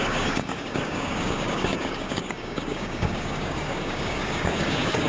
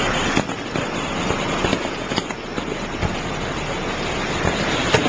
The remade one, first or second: first